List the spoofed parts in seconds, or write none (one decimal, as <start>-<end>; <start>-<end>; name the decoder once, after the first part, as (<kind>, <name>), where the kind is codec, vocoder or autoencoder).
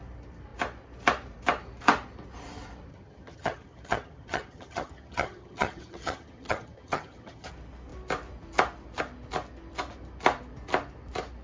2.9-7.5 (vocoder, HiFi-GAN)